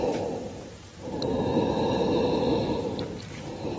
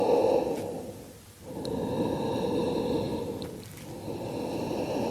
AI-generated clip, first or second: first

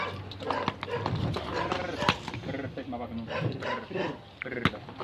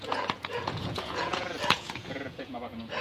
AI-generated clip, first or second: second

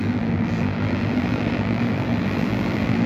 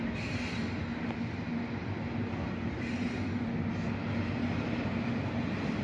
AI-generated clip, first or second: first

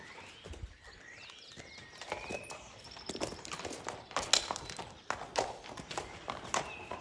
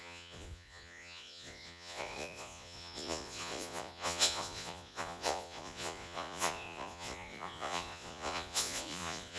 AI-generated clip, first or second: second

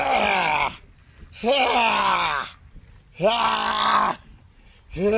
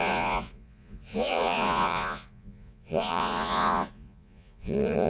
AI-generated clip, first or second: second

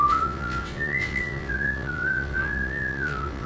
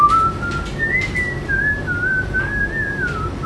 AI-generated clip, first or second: first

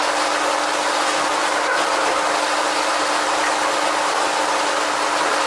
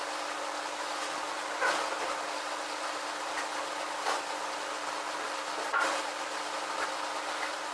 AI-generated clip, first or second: second